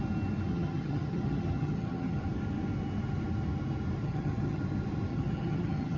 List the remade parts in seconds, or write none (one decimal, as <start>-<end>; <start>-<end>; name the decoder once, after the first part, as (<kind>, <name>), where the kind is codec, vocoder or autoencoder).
0.5-2.2 (vocoder, HiFi-GAN); 4.0-4.6; 5.1-6.0